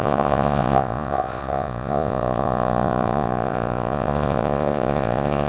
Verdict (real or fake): fake